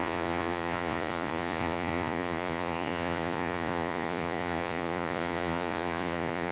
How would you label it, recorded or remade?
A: remade